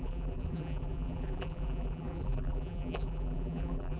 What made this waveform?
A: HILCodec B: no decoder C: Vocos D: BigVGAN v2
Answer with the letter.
D